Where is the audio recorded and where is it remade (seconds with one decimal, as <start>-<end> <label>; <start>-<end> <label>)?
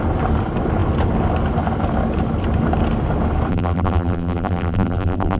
0.0-3.5 recorded; 3.5-5.4 remade